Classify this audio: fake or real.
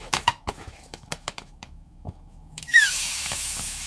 fake